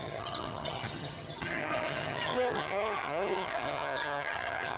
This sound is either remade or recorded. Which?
remade